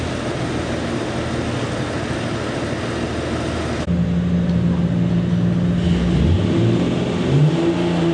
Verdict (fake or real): real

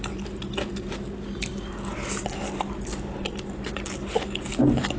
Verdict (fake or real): real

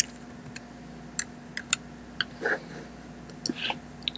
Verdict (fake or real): real